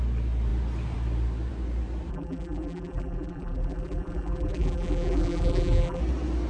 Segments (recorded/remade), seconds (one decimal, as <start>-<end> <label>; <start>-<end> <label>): 0.0-2.1 recorded; 2.1-6.0 remade; 6.0-6.5 recorded